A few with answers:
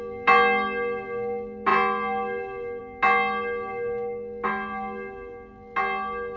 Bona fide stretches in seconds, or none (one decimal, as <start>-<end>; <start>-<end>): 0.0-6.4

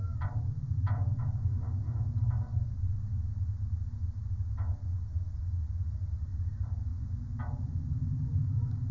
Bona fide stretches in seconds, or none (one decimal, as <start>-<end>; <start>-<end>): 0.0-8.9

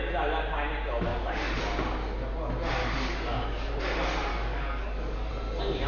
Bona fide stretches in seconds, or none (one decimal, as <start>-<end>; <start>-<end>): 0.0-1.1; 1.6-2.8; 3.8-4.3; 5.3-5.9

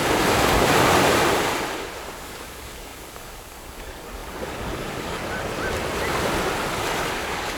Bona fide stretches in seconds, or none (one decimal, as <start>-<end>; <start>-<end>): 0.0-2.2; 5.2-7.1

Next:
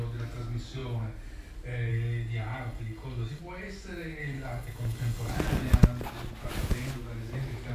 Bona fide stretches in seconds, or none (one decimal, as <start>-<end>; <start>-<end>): 0.0-1.9; 3.4-4.2; 5.3-7.7